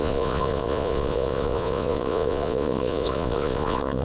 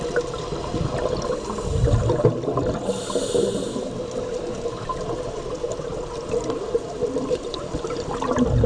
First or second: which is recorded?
second